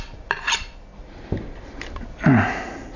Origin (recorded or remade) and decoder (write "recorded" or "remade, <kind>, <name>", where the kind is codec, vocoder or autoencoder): recorded